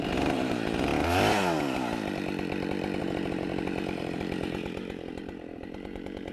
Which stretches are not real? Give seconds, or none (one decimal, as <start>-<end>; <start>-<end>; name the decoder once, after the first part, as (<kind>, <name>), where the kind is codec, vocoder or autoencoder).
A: 0.0-0.9 (vocoder, BigVGAN v2); 3.0-6.3